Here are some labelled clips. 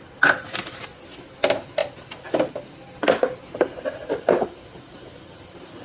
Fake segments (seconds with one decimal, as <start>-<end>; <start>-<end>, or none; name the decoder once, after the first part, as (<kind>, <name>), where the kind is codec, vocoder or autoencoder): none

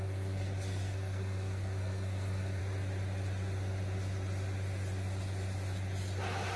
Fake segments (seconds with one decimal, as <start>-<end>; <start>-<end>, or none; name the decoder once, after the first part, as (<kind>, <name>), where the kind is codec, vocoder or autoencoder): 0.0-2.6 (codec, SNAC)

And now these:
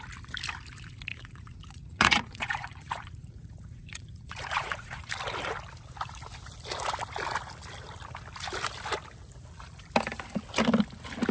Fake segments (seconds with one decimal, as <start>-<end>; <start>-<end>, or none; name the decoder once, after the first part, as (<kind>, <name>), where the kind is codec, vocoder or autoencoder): 1.1-5.1 (vocoder, Vocos)

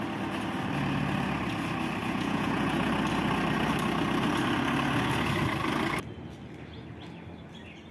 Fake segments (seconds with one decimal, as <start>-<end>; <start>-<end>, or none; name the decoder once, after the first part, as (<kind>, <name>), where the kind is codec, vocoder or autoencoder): 2.0-2.9 (vocoder, Vocos)

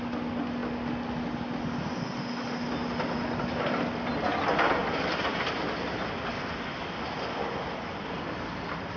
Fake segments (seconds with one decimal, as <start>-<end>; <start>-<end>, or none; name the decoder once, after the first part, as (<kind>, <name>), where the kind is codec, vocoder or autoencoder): none

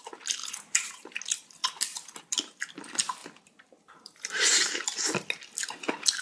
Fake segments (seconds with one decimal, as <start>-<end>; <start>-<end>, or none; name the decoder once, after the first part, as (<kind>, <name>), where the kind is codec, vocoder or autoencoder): 0.4-1.2 (vocoder, BigVGAN v2); 3.2-5.0

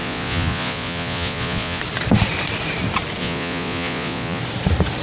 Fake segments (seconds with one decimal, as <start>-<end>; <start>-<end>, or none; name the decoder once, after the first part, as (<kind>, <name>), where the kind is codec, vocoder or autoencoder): 0.0-1.8 (vocoder, Vocos); 3.2-4.4

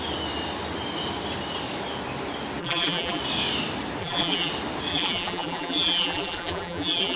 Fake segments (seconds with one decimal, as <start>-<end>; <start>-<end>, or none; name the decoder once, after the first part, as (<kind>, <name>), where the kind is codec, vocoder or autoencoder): 2.6-3.2 (vocoder, BigVGAN v2); 4.0-4.5; 4.9-7.2